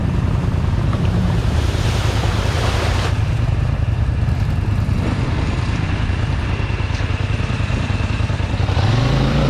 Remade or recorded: remade